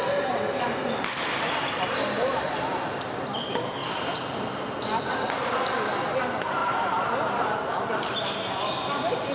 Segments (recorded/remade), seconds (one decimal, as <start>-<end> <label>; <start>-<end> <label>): 0.0-3.8 recorded; 3.8-4.3 remade; 4.3-6.6 recorded; 6.6-7.9 remade; 7.9-9.3 recorded